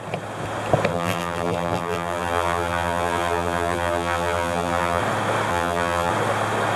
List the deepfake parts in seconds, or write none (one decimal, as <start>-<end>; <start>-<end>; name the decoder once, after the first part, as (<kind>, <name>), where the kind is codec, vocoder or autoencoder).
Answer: 0.9-5.0 (vocoder, BigVGAN v2); 5.5-6.1